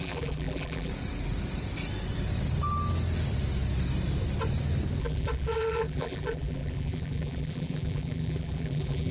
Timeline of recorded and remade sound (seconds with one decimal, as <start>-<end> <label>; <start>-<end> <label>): 0.0-0.9 remade; 0.9-5.0 recorded; 5.0-9.1 remade